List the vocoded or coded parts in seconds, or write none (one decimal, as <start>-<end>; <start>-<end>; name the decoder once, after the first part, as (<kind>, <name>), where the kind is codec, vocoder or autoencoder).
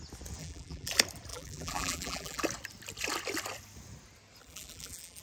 0.4-0.9 (vocoder, BigVGAN v2); 1.3-2.4; 4.4-5.2